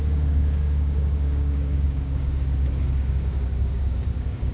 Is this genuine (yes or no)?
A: no